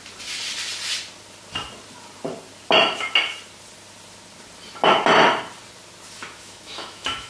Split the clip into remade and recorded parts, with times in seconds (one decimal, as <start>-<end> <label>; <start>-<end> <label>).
0.0-6.2 recorded; 6.2-7.3 remade